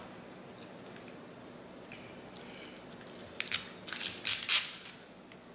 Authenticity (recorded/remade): recorded